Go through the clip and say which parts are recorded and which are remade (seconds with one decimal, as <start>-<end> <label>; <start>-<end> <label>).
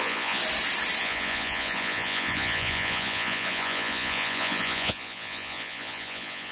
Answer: 0.0-0.4 remade; 0.4-1.0 recorded; 1.0-6.5 remade